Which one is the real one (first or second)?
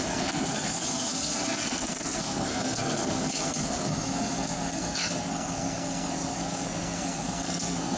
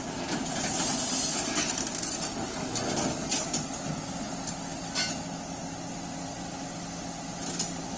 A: second